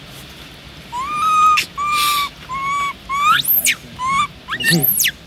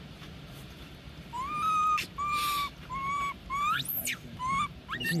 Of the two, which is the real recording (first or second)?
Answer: first